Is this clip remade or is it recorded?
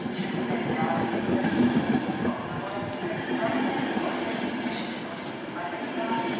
recorded